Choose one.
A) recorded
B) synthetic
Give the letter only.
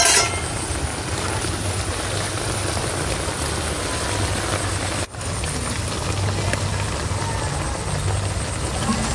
A